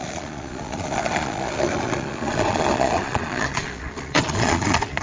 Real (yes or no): no